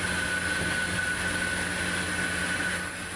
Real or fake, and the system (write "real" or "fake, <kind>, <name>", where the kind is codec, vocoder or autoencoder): real